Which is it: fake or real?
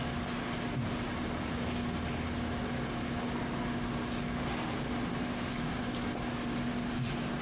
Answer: real